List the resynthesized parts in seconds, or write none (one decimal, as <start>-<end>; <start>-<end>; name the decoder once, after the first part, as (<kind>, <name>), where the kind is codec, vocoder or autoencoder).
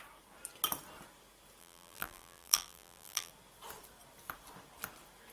1.6-3.3 (vocoder, BigVGAN v2)